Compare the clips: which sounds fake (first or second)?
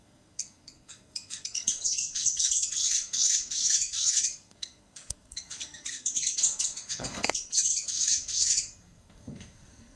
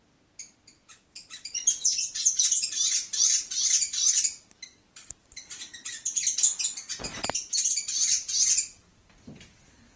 first